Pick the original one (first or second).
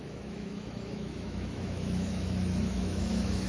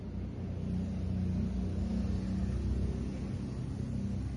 second